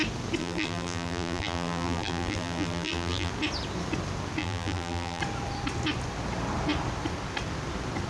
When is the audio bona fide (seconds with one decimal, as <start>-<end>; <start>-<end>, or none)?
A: 0.0-0.4; 3.3-4.4; 5.2-8.1